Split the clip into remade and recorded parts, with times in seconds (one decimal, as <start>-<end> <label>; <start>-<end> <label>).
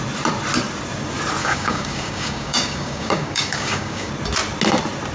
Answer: 0.0-1.4 recorded; 1.4-4.1 remade; 4.1-5.1 recorded